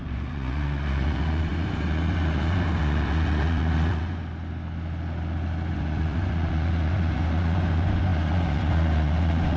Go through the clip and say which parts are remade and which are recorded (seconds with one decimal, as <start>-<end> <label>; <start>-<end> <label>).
0.0-4.2 remade; 4.2-5.7 recorded; 5.7-9.6 remade